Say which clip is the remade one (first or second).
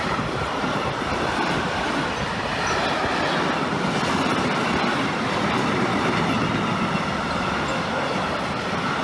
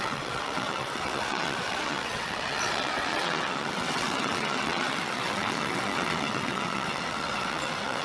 second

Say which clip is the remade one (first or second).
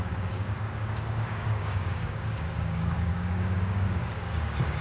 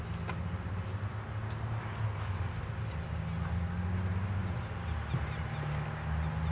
first